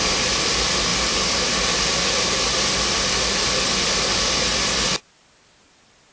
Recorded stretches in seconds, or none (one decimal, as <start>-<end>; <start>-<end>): 0.0-6.1